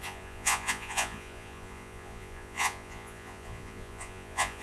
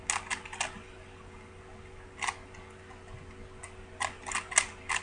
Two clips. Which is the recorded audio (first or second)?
second